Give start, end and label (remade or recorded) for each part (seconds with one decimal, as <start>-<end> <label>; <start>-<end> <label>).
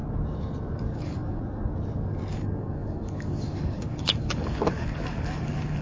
0.0-0.8 recorded; 0.8-1.4 remade; 1.4-2.3 recorded; 2.3-5.8 remade